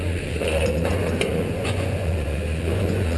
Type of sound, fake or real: fake